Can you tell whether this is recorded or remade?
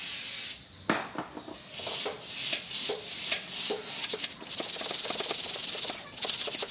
recorded